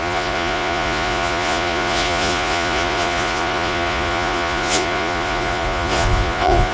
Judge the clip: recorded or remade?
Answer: remade